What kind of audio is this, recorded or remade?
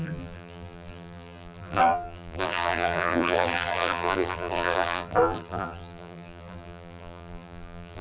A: remade